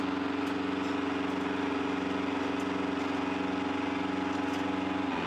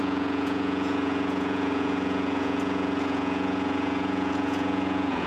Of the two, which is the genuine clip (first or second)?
first